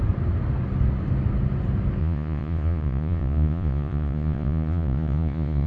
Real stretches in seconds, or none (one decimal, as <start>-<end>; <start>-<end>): 0.0-2.0